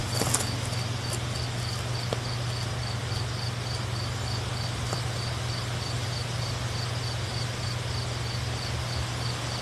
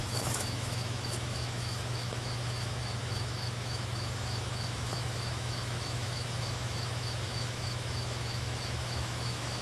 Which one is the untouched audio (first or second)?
first